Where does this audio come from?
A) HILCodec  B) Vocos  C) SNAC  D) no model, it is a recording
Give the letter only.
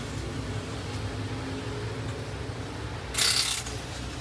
D